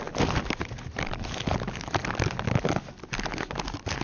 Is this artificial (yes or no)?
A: no